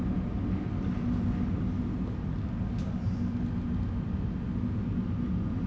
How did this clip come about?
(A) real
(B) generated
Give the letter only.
A